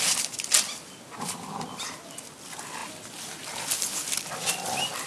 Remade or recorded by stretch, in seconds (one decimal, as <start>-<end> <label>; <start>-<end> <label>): 0.0-5.1 recorded